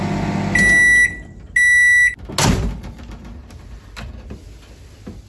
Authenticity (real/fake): real